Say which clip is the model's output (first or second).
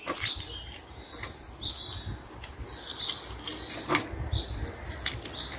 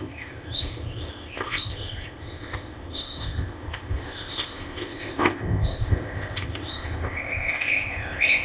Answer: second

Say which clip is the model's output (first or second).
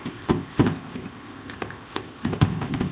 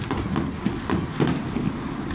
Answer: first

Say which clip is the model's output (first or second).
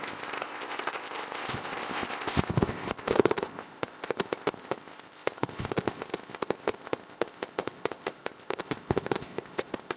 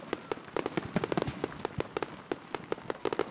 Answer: first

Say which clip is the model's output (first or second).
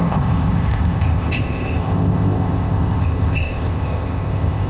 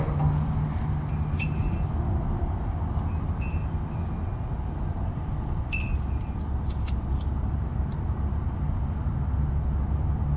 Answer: first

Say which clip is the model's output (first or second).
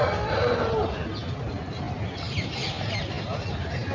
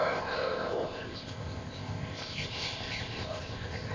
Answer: second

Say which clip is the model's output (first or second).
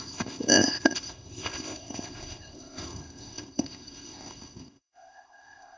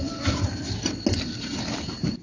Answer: first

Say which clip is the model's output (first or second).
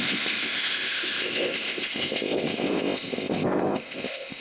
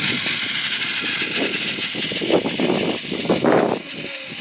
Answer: first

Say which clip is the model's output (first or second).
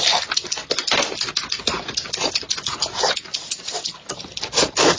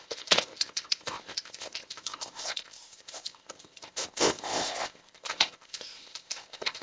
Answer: second